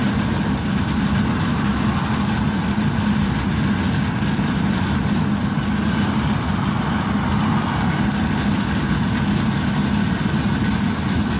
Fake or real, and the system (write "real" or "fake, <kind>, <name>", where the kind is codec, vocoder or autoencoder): real